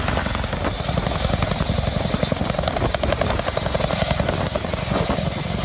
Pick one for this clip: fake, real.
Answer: real